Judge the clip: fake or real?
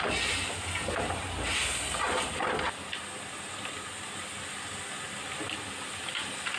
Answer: real